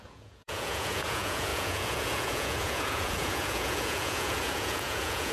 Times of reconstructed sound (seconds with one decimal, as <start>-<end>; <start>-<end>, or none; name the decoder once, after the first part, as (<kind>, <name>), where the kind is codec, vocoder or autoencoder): 0.0-5.3 (vocoder, Vocos)